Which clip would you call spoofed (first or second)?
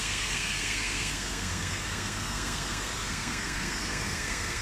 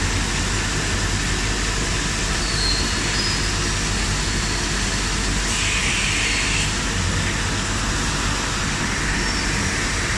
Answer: first